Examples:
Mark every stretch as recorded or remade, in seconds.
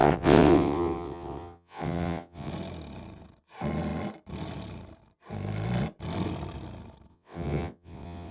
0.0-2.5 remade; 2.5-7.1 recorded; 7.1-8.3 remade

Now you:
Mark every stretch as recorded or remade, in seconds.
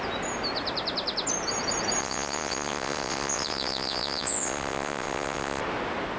0.0-2.0 recorded; 2.0-5.6 remade; 5.6-6.2 recorded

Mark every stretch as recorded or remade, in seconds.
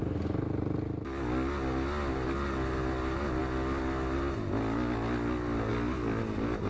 0.0-6.7 recorded